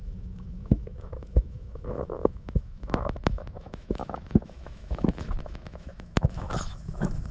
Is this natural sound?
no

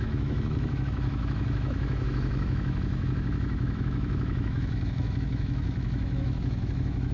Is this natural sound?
no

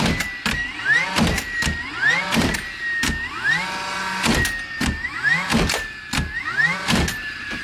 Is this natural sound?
yes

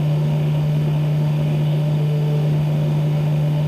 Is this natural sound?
no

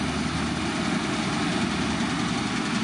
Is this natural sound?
yes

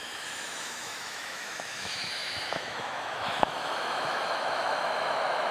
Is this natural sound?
no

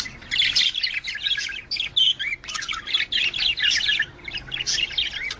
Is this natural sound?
yes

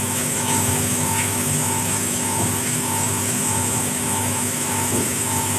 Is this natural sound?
no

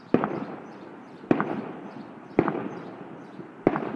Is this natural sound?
yes